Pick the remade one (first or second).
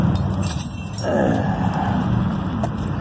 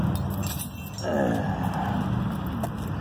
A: first